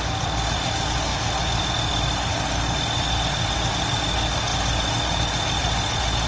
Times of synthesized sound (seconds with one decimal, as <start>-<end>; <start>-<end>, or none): none